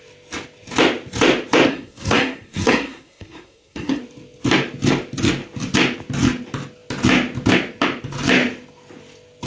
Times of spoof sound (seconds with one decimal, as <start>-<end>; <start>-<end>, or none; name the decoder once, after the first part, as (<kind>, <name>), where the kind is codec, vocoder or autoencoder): 1.7-4.0 (codec, SNAC)